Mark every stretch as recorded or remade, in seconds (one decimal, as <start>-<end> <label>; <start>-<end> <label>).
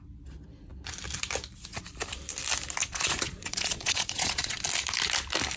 0.0-2.8 recorded; 2.8-4.6 remade; 4.6-5.6 recorded